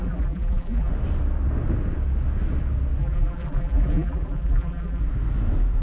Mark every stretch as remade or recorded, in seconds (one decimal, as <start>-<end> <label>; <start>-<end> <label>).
0.0-0.9 remade; 0.9-3.0 recorded; 3.0-5.0 remade; 5.0-5.8 recorded